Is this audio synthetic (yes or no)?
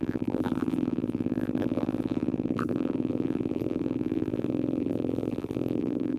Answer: yes